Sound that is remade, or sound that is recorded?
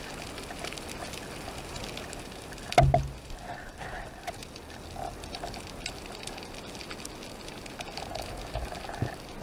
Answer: recorded